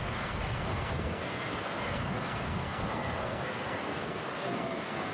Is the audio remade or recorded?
remade